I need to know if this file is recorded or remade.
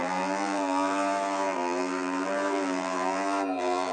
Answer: remade